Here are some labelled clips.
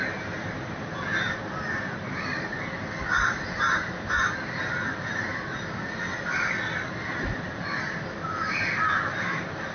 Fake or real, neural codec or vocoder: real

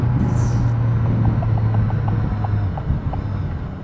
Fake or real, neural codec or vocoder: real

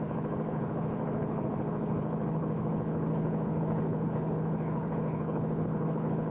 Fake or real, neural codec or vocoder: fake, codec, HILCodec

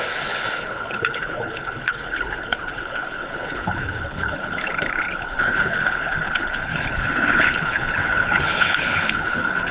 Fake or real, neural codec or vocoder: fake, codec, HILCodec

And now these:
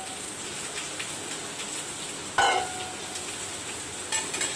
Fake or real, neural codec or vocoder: real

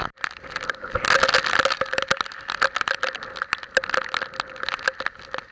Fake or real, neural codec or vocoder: real